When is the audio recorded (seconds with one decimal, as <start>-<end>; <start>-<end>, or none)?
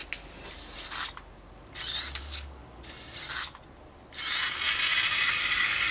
0.0-2.2; 2.6-5.3